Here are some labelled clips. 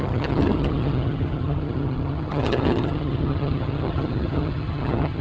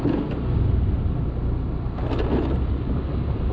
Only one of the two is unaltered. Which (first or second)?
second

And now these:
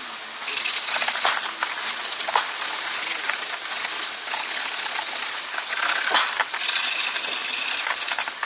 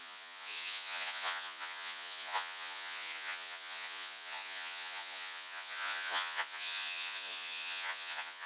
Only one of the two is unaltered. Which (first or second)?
first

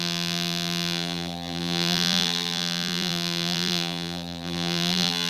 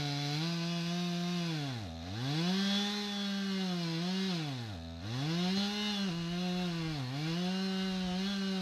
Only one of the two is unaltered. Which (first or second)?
second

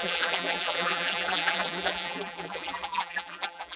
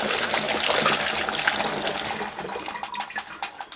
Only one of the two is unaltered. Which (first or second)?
second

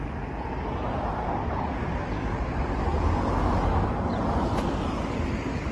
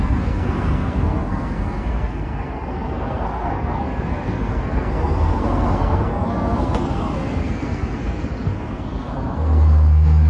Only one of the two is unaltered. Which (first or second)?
first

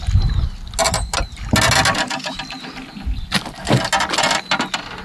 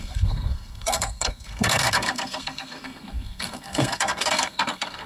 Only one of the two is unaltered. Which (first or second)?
first